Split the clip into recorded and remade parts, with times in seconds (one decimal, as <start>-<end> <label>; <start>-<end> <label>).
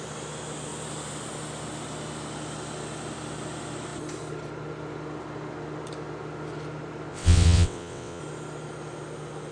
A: 0.0-7.1 recorded; 7.1-8.2 remade; 8.2-9.5 recorded